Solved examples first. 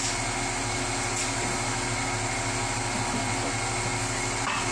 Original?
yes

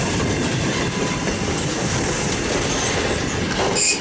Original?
yes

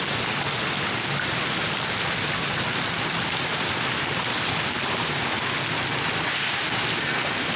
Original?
yes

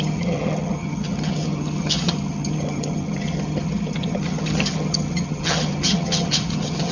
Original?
no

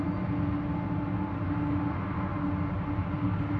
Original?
yes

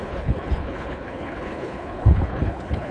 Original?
no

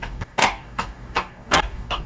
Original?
no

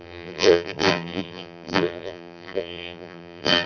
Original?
no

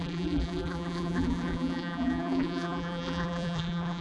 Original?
no